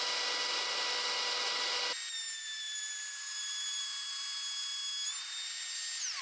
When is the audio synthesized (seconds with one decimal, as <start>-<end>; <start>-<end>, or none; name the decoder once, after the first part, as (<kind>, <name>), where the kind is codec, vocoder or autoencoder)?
2.2-5.1 (vocoder, BigVGAN v2)

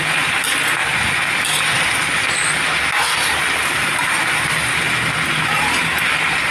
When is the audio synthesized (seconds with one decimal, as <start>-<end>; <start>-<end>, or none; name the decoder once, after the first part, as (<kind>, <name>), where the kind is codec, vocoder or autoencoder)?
none

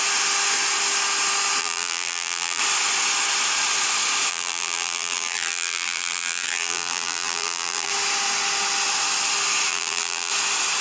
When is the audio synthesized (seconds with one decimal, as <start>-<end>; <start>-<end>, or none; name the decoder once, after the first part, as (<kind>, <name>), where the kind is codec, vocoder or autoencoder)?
1.6-2.6 (vocoder, BigVGAN v2); 4.3-7.9; 9.7-10.3

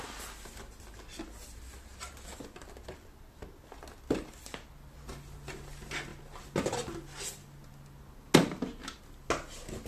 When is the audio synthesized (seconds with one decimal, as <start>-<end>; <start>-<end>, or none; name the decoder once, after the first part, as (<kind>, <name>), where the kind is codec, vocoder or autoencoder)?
none